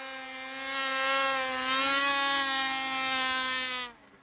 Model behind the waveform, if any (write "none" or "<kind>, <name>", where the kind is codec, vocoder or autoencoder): none